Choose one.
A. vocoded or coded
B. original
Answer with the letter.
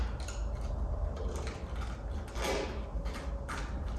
B